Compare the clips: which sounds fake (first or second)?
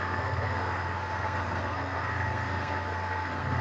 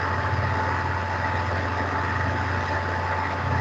first